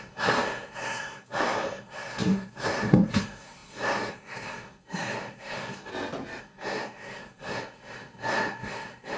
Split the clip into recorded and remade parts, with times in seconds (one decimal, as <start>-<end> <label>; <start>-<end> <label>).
0.0-5.9 remade; 5.9-6.4 recorded; 6.4-9.2 remade